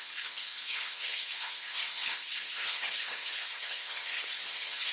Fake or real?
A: fake